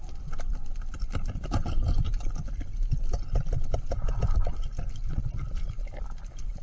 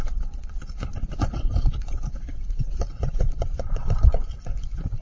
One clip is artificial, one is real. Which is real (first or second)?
first